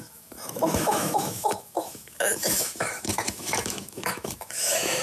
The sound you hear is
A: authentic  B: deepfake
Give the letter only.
B